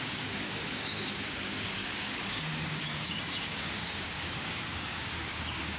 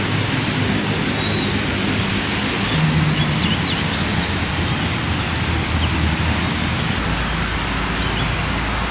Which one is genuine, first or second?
second